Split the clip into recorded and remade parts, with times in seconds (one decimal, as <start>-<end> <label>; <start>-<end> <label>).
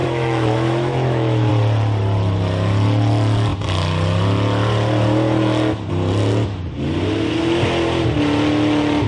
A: 0.0-1.5 remade; 1.5-9.1 recorded